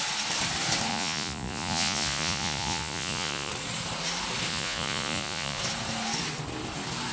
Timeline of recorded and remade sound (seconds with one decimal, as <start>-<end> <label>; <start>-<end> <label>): 0.0-0.9 recorded; 0.9-3.5 remade; 3.5-4.5 recorded; 4.5-5.6 remade; 5.6-7.1 recorded